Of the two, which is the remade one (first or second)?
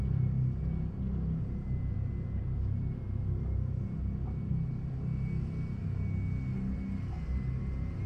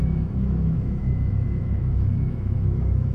second